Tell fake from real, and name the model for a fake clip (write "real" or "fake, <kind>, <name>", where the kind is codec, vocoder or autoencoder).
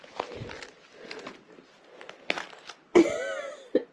real